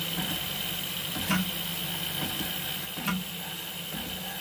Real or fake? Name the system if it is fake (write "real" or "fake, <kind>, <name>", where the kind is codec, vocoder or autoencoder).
real